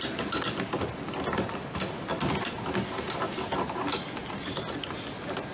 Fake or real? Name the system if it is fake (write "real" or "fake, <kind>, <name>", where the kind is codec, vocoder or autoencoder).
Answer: real